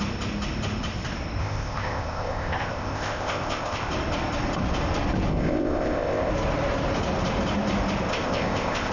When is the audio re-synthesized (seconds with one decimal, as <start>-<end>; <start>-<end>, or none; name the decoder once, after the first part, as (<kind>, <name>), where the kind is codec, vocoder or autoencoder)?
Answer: 1.4-3.9 (codec, ZipCodec); 5.3-6.3; 8.1-8.9